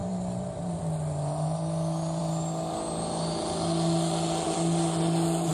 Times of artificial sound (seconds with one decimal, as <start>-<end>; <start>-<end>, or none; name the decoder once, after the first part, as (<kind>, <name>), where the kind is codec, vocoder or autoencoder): 0.0-0.8 (vocoder, BigVGAN v2)